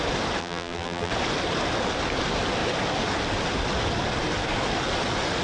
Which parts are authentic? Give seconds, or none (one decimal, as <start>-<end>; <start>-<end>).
0.0-0.4; 1.1-5.4